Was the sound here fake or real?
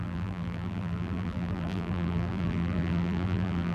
fake